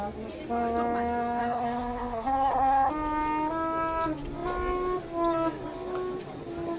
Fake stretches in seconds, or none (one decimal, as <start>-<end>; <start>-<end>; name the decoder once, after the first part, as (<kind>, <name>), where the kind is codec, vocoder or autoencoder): 1.4-2.9 (codec, SNAC)